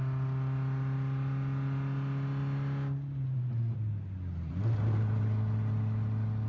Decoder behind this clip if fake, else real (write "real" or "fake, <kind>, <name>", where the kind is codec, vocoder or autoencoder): real